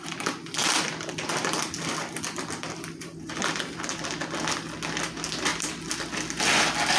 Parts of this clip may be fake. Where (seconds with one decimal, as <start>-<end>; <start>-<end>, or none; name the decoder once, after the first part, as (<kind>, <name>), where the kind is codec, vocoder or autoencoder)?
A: 0.6-3.8 (vocoder, BigVGAN v2); 5.5-6.5